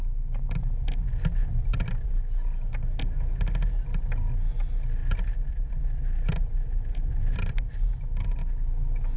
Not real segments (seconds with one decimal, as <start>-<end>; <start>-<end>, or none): 1.4-2.1; 5.0-7.6